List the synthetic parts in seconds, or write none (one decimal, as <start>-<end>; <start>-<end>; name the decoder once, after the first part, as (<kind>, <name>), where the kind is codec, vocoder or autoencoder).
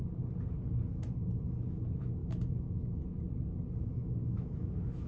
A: 2.2-3.0 (autoencoder, DAC-VAE); 3.9-5.1